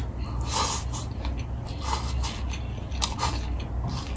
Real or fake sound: real